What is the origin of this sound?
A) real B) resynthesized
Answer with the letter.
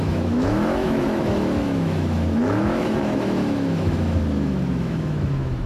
B